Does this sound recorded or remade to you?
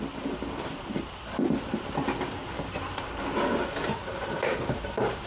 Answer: remade